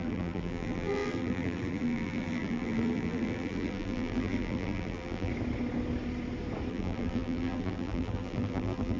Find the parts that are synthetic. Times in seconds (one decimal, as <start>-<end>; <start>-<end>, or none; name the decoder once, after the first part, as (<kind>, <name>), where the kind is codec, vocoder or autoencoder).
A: 0.0-5.3 (vocoder, BigVGAN v2); 6.7-9.0